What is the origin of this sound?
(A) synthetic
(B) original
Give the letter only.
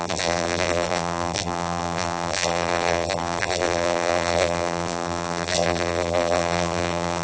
A